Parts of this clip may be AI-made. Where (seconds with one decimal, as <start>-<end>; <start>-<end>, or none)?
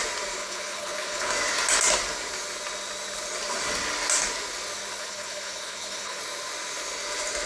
0.4-1.3; 5.0-6.2